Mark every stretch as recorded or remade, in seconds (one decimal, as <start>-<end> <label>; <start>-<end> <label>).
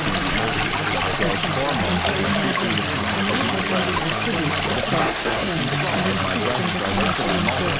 0.0-5.0 recorded; 5.0-5.6 remade; 5.6-7.8 recorded